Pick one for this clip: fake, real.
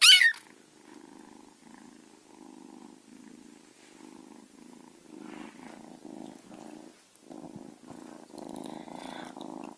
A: real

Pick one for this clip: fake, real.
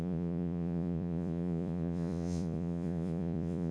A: fake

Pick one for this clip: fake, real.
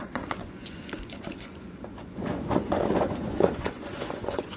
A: fake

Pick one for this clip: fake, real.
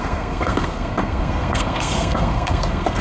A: fake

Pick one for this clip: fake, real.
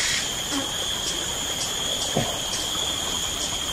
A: fake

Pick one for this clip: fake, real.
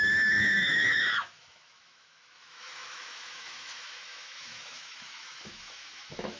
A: fake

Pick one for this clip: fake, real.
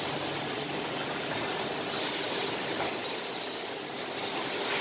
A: real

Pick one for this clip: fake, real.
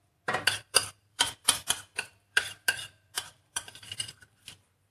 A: fake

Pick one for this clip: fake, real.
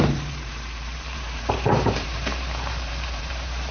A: fake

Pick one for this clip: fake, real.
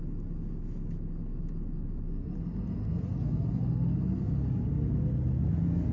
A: real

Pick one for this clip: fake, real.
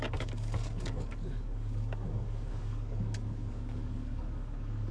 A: fake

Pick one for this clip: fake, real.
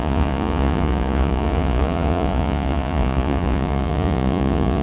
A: fake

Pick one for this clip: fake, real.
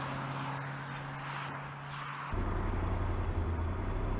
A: real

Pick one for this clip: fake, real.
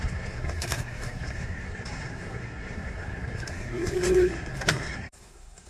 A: fake